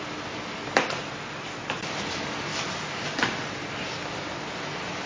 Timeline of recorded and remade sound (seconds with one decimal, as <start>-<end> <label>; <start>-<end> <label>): 0.0-5.1 recorded